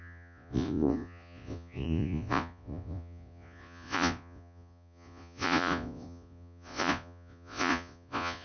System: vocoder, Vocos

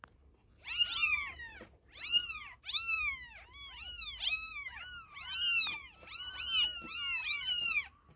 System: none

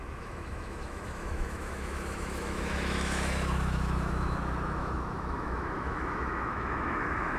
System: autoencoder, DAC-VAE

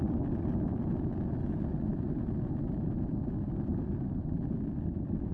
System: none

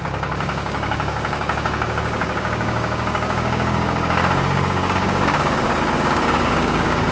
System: codec, DAC